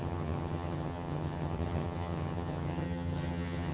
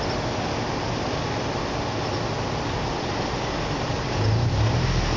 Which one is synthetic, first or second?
first